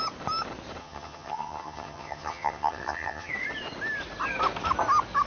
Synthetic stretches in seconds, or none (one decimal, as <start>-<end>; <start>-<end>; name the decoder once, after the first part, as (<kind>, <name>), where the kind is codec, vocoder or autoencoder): 0.8-3.3 (vocoder, HiFi-GAN)